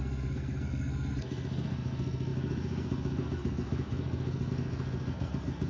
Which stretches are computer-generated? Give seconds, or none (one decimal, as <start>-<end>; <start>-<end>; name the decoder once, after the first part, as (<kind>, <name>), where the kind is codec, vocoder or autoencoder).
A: 0.0-5.7 (codec, SNAC)